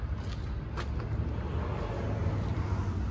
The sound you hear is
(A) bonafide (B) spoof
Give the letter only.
A